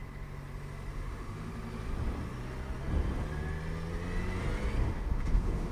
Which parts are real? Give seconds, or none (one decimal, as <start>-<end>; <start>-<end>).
0.0-0.9; 1.5-4.9